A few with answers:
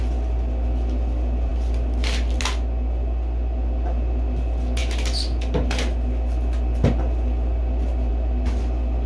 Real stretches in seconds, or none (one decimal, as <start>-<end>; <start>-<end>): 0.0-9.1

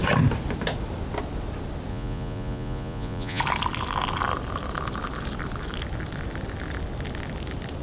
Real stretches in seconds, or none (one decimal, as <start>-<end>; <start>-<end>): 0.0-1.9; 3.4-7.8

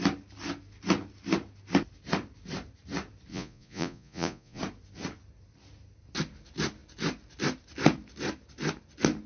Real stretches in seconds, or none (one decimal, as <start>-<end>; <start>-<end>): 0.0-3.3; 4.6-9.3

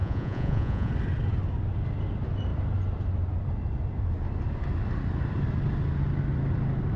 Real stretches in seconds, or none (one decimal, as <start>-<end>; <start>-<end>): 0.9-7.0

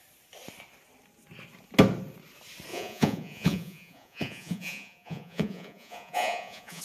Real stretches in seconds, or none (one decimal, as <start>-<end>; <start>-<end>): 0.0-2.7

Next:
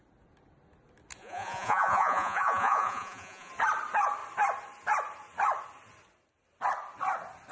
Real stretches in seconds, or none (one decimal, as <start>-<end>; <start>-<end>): 0.0-1.2; 3.5-7.5

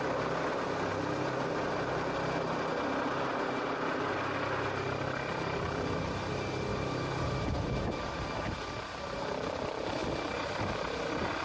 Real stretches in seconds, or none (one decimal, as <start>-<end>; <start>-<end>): 0.0-11.4

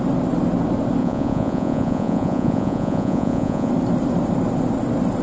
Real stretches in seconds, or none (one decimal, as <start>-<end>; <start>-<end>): 0.0-1.0; 3.7-5.2